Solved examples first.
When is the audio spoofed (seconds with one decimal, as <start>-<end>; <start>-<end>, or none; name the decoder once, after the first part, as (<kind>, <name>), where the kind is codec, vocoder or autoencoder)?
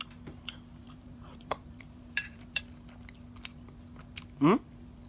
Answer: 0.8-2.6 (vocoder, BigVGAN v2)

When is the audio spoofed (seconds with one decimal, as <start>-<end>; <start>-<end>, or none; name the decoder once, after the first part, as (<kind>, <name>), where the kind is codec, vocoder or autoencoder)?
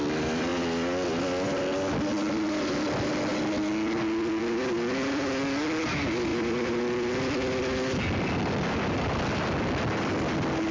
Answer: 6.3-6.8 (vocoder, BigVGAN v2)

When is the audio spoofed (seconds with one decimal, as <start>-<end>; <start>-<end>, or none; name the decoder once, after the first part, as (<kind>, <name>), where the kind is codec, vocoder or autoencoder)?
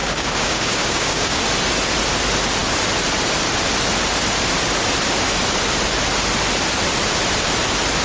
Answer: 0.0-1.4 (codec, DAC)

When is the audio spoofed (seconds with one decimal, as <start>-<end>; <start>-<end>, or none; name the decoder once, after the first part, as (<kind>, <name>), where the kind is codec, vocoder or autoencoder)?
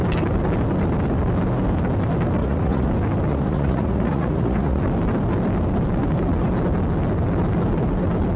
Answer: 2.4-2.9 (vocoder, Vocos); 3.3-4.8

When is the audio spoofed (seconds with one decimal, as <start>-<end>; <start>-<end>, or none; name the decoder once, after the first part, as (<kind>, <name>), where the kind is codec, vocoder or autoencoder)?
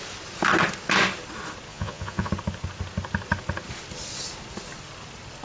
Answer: 1.7-2.3 (vocoder, Vocos)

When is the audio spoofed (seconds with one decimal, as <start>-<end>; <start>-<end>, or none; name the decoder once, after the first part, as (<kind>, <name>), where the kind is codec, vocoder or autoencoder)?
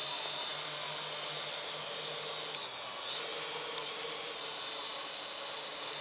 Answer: none